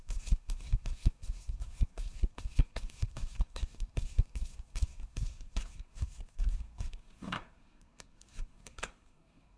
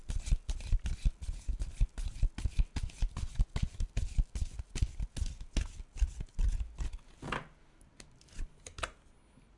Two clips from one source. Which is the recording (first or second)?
second